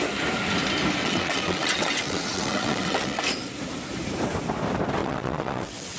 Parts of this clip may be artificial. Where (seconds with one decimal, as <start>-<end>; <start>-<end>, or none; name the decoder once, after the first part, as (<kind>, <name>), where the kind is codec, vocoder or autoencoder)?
1.0-3.2 (vocoder, WaveNeXt); 5.0-6.0